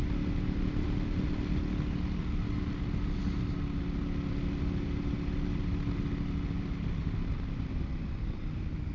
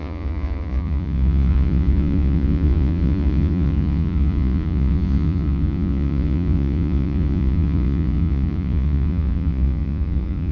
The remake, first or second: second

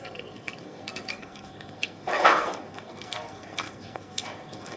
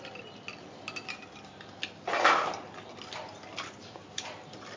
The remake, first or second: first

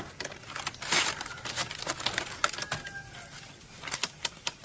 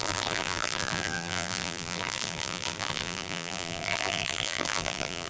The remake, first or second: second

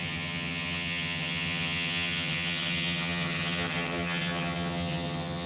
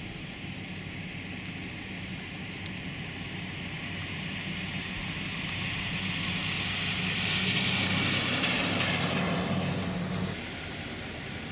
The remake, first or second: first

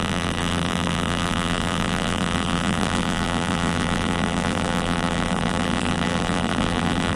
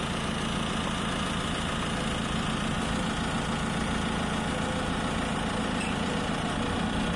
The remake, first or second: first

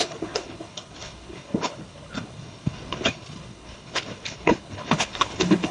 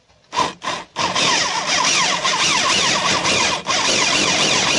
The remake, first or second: first